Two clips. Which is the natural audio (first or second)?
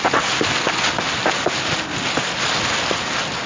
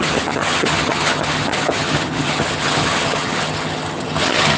first